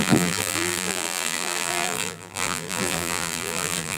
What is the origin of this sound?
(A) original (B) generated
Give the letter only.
B